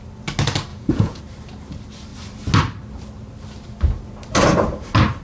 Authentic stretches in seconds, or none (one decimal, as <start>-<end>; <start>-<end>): 0.0-0.7; 1.2-5.2